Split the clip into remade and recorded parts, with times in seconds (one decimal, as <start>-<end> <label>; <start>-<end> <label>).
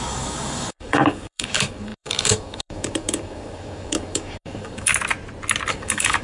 0.0-4.9 remade; 4.9-5.7 recorded; 5.7-6.2 remade